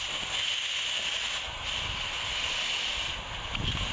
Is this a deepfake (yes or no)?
no